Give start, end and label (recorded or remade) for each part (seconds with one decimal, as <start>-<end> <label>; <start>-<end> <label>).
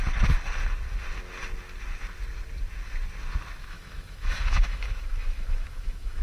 0.0-3.6 recorded; 3.6-6.2 remade